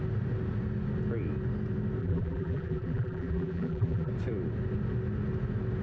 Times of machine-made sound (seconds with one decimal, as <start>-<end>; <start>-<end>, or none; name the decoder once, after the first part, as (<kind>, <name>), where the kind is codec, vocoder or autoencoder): 2.0-4.1 (vocoder, BigVGAN v2)